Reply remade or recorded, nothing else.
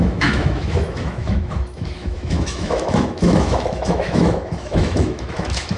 remade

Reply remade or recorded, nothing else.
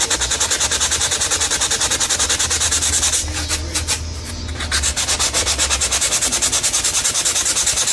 recorded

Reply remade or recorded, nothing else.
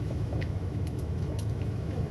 remade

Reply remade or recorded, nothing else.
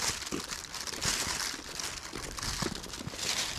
recorded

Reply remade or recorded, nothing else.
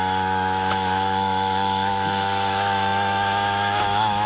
remade